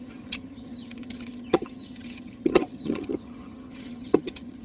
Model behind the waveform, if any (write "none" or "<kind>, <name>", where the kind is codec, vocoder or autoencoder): vocoder, HiFi-GAN